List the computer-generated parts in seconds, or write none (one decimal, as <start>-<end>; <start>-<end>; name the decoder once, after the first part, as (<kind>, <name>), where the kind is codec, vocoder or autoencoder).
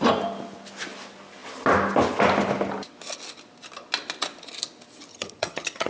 5.1-5.9 (vocoder, HiFi-GAN)